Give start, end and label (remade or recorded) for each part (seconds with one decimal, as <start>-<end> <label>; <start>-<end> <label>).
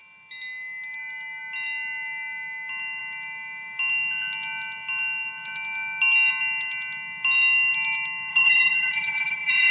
0.0-8.3 recorded; 8.3-9.7 remade